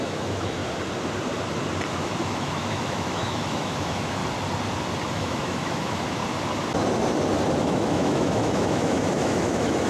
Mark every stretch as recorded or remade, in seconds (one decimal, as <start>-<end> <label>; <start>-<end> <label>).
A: 0.0-0.6 remade; 0.6-1.9 recorded; 1.9-4.2 remade; 4.2-5.1 recorded; 5.1-6.2 remade; 6.2-7.6 recorded; 7.6-9.9 remade